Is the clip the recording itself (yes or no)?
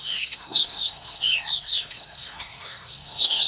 no